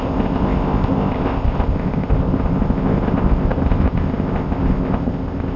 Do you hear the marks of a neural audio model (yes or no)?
yes